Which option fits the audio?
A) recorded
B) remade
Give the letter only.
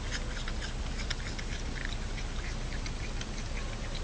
A